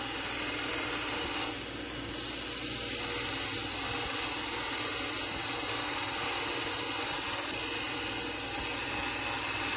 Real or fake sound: real